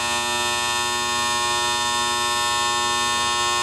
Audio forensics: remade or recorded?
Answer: recorded